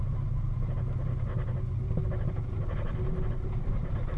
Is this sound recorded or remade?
recorded